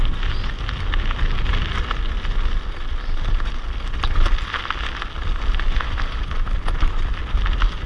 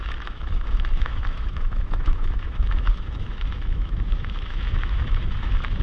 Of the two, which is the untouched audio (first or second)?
first